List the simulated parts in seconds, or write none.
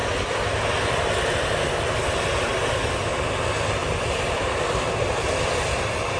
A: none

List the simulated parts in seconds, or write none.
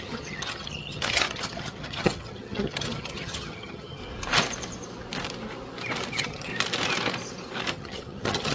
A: 0.0-4.0 (vocoder, HiFi-GAN); 6.1-6.5; 7.7-8.5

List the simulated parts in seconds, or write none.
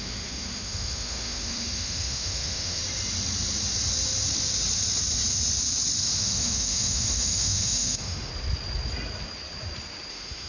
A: 0.0-2.8 (autoencoder, DAC-VAE); 6.2-8.3; 10.1-10.5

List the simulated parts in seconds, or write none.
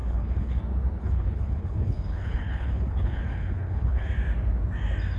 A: 0.0-0.6 (codec, HILCodec); 1.0-4.1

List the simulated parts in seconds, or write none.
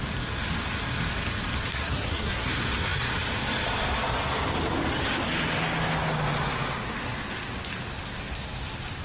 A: 1.7-2.5 (codec, SNAC)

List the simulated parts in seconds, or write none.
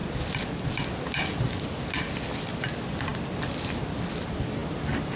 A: 4.6-5.2 (vocoder, BigVGAN v2)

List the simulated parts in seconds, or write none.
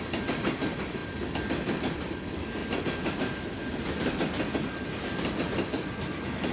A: none